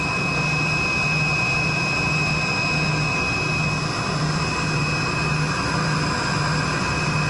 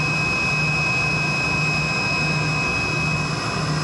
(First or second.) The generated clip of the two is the first